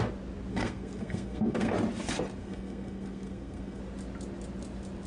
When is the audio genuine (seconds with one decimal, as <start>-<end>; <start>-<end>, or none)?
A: 0.0-0.5; 1.7-2.4; 3.8-5.1